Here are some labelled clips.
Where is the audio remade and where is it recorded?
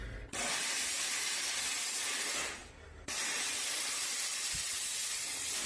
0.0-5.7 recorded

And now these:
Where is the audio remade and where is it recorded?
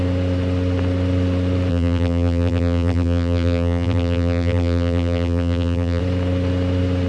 0.0-1.7 recorded; 1.7-6.0 remade; 6.0-7.1 recorded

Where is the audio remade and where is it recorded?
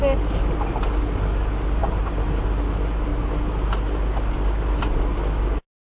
0.0-1.8 recorded; 1.8-2.4 remade; 2.4-5.8 recorded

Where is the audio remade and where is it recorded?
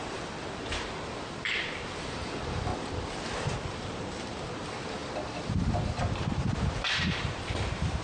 0.0-2.7 remade; 2.7-3.7 recorded; 3.7-5.0 remade; 5.0-6.8 recorded; 6.8-8.0 remade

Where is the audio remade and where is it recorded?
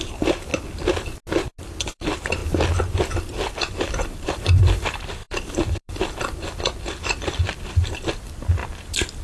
0.0-0.5 remade; 0.5-1.8 recorded; 1.8-2.4 remade; 2.4-2.9 recorded; 2.9-9.2 remade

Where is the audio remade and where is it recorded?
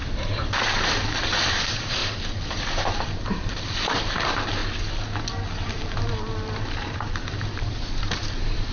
0.0-2.0 remade; 2.0-2.6 recorded; 2.6-4.6 remade; 4.6-5.6 recorded; 5.6-8.7 remade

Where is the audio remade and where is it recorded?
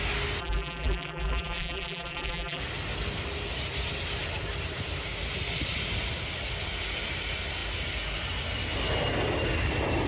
0.0-0.4 recorded; 0.4-2.6 remade; 2.6-10.1 recorded